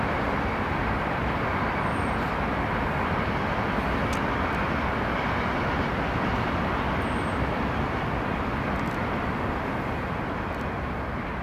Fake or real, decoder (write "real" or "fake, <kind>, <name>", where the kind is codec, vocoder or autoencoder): real